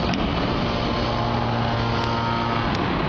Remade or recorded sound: recorded